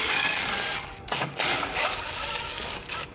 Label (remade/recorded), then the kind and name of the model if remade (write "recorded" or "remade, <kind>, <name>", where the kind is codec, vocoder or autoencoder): remade, codec, DAC